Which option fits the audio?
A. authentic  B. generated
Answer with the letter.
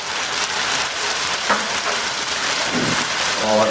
B